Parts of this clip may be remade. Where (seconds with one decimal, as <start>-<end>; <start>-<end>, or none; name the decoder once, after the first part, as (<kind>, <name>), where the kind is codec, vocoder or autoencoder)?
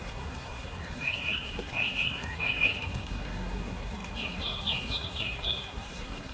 0.0-6.3 (codec, SNAC)